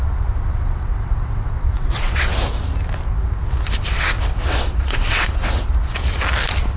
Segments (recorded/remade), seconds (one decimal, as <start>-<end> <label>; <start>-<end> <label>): 0.0-0.5 recorded; 0.5-2.3 remade; 2.3-4.3 recorded; 4.3-5.5 remade; 5.5-6.8 recorded